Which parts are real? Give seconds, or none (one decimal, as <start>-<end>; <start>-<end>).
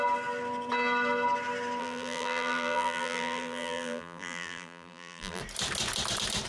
0.0-1.8; 5.4-6.5